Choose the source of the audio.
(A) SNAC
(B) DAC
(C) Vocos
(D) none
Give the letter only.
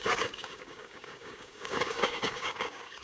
B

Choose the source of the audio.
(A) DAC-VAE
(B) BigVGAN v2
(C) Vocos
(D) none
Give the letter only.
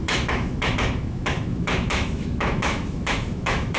A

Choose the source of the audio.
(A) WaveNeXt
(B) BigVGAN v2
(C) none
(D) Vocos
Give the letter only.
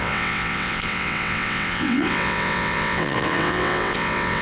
A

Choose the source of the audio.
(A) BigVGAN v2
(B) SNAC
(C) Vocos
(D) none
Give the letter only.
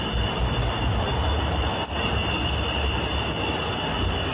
D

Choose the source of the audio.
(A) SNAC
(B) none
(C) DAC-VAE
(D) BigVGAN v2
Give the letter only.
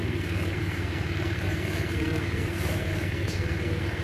A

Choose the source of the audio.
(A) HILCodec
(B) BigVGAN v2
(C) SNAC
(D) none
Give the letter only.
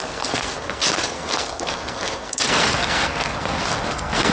C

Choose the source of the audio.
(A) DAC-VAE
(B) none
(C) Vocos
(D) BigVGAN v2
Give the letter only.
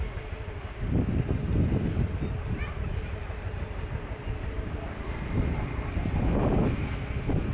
B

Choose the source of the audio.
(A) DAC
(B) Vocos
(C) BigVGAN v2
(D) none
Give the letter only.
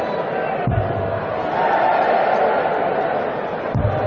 D